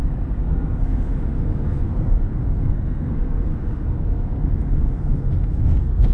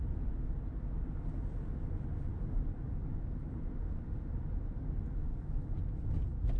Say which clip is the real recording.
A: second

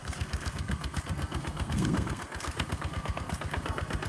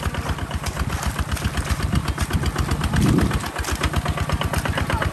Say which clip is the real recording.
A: second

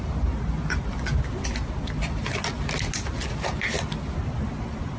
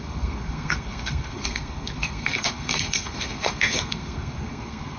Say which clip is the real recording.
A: first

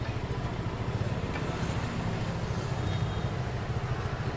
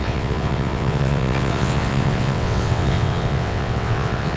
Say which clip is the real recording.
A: first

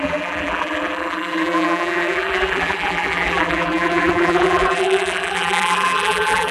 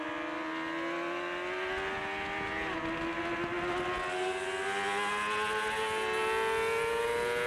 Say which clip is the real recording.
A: second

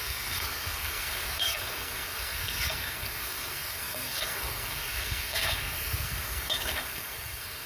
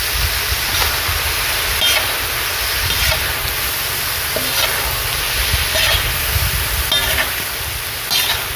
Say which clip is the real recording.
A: second